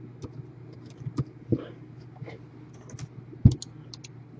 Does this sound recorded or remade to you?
recorded